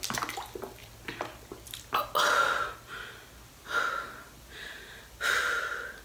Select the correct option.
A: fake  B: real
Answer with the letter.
B